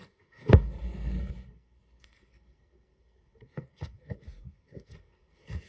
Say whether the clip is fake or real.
fake